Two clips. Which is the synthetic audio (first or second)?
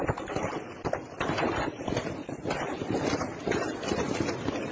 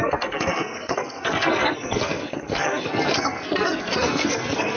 second